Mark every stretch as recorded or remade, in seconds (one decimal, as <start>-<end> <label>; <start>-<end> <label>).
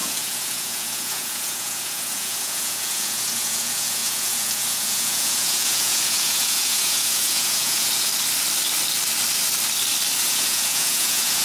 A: 0.0-8.1 remade; 8.1-10.2 recorded; 10.2-11.4 remade